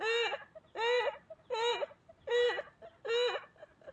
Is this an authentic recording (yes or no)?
yes